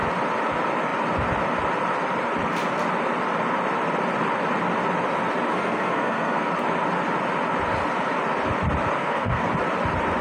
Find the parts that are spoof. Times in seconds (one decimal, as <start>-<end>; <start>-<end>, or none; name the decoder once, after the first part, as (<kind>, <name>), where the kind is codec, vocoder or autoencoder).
5.5-6.5 (codec, SNAC); 9.0-9.5